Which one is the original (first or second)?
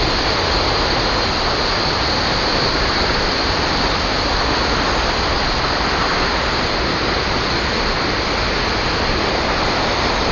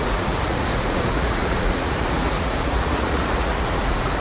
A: first